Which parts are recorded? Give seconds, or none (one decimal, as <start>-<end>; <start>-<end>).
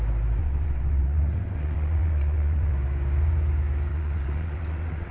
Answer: 0.0-0.4; 2.7-3.9